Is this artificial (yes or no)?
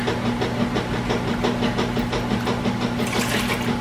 no